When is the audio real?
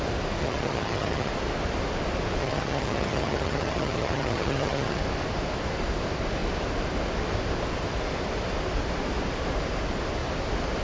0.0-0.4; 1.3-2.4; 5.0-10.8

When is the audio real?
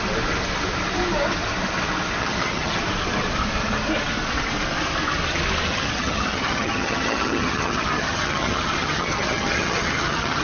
0.0-2.2; 2.8-5.7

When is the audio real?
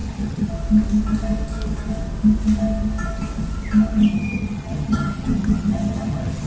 0.5-4.0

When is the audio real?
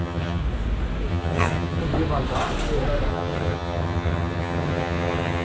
0.4-1.1; 1.8-3.1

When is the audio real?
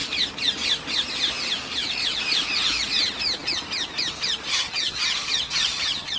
0.0-4.5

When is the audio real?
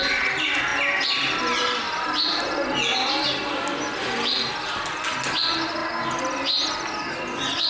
0.0-7.7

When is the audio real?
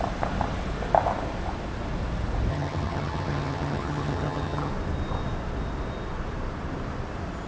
0.0-2.5; 4.7-7.5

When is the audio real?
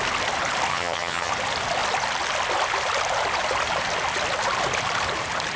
0.0-0.7; 1.3-5.6